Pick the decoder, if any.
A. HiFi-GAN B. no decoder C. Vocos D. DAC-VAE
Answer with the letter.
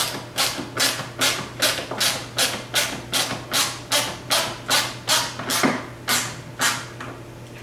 B